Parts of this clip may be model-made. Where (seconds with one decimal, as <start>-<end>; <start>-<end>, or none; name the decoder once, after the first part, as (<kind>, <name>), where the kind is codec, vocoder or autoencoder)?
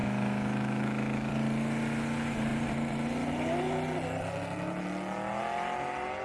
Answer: 0.0-1.3 (autoencoder, DAC-VAE)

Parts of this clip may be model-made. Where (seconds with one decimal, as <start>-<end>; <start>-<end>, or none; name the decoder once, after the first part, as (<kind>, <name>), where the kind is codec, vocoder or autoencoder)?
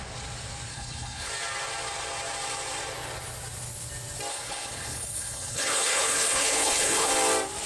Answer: 0.7-1.3 (codec, HILCodec); 4.3-7.1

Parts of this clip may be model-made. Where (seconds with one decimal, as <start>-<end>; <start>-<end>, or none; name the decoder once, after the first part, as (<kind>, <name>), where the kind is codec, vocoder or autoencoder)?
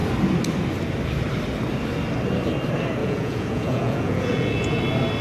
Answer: 3.0-4.8 (vocoder, Vocos)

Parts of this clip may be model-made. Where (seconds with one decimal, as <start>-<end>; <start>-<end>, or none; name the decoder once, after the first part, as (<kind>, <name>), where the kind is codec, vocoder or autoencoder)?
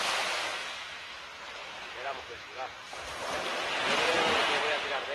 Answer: 0.4-1.2 (autoencoder, DAC-VAE); 2.0-2.5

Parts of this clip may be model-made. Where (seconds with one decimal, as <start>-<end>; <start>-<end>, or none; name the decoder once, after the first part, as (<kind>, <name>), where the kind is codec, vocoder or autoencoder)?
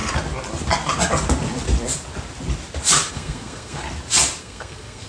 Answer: 3.1-3.8 (codec, SNAC); 4.4-5.1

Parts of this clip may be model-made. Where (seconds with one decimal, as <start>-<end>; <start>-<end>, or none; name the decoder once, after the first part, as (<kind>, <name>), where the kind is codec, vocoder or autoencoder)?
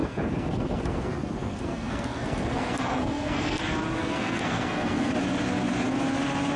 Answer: 0.0-3.6 (codec, SNAC); 4.0-5.1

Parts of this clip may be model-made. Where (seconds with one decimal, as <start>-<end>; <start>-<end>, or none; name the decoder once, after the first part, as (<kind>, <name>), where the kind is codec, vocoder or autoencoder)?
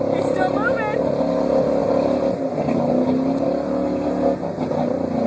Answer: none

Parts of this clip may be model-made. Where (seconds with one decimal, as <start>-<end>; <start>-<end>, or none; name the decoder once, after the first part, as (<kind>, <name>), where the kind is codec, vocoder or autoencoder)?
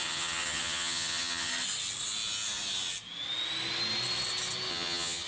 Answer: 0.0-1.5 (vocoder, HiFi-GAN); 4.7-5.3